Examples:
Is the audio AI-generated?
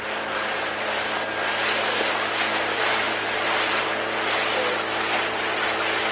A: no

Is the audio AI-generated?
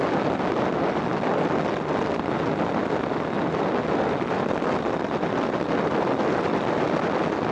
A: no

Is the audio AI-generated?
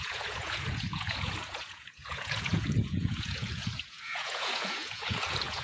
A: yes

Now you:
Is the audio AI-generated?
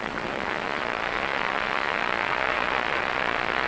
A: yes